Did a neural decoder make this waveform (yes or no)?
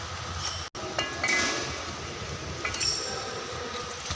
no